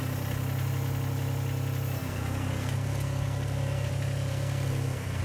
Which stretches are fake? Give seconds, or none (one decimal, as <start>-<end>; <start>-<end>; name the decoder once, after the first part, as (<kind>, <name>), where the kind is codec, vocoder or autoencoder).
2.0-3.9 (codec, SNAC); 4.3-5.2